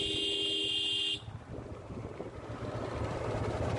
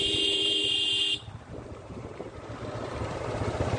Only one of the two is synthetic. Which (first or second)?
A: second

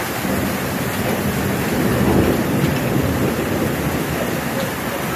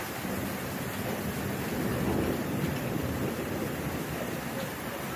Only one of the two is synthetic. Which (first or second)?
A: second